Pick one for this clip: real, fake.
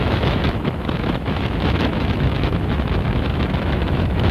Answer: fake